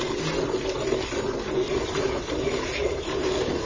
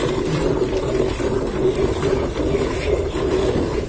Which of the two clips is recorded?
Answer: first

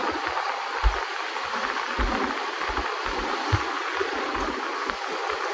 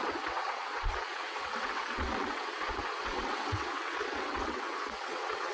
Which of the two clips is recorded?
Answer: first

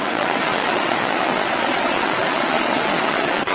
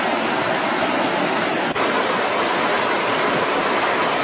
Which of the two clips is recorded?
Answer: second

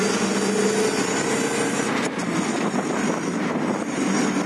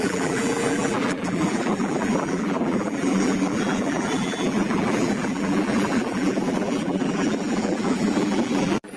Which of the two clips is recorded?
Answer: first